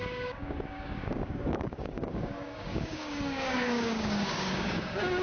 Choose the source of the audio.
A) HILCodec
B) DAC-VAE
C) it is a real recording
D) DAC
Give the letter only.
D